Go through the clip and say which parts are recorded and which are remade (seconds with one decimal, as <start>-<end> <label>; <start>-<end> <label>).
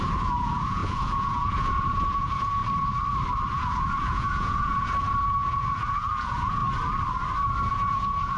0.0-2.6 remade; 2.6-3.5 recorded; 3.5-6.6 remade; 6.6-7.7 recorded; 7.7-8.4 remade